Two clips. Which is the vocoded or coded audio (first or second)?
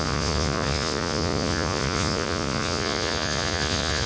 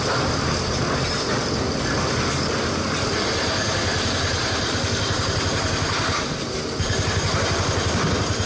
first